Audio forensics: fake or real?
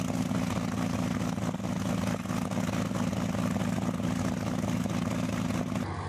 real